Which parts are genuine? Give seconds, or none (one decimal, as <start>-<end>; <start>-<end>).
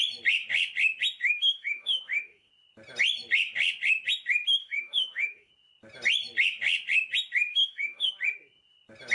0.0-1.2; 2.5-4.6; 5.5-7.5; 8.1-9.1